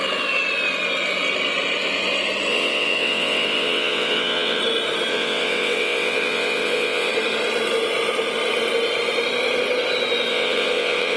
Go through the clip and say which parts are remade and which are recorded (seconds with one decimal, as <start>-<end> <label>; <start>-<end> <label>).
0.0-2.5 recorded; 2.5-4.6 remade; 4.6-5.1 recorded; 5.1-7.1 remade; 7.1-10.3 recorded; 10.3-11.2 remade